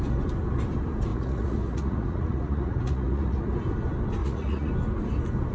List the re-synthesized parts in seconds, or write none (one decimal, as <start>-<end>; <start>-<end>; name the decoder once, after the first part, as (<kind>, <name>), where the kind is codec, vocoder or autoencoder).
1.1-3.4 (vocoder, Vocos); 4.2-4.7